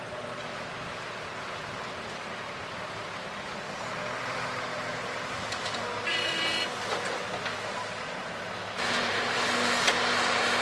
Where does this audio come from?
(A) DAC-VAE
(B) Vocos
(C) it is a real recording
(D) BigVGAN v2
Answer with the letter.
C